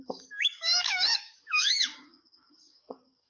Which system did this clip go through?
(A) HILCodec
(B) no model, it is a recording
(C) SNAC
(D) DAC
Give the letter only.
D